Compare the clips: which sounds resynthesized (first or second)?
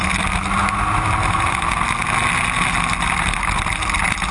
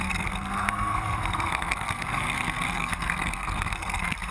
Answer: second